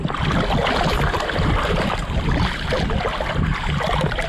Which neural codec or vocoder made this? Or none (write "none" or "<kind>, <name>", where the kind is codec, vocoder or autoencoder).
none